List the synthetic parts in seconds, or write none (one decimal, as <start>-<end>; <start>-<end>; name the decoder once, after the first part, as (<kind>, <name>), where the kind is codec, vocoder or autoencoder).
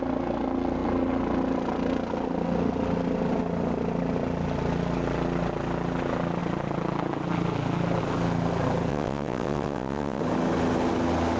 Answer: 8.9-10.2 (vocoder, WaveNeXt)